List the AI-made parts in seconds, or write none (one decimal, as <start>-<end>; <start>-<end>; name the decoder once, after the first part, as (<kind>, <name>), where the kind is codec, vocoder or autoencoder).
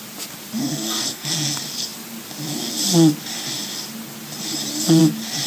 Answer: 0.6-1.3 (codec, SNAC)